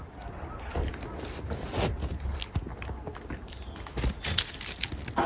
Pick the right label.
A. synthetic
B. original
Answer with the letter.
B